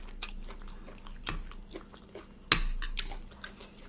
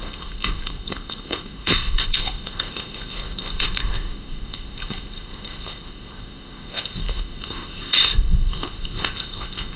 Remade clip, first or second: second